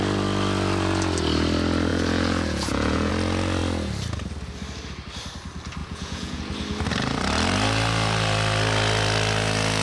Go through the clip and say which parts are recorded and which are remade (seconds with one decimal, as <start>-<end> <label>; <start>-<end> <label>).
0.0-1.9 recorded; 1.9-3.1 remade; 3.1-5.8 recorded; 5.8-6.4 remade; 6.4-9.8 recorded